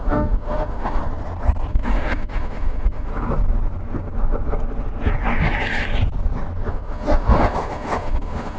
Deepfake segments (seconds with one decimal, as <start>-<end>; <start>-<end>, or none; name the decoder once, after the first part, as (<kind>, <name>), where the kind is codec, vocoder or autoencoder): 0.0-1.0 (autoencoder, DAC-VAE); 1.7-3.1; 6.7-8.6